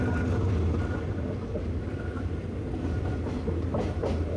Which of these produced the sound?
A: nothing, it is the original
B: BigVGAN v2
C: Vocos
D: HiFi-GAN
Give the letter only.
A